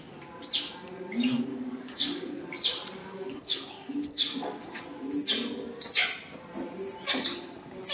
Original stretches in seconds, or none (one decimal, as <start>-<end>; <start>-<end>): 0.0-1.5; 2.3-3.0; 4.8-7.9